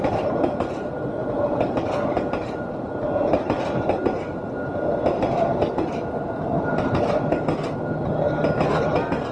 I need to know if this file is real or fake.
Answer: real